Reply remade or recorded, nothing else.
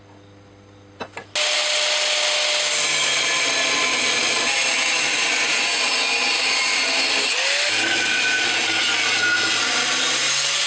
recorded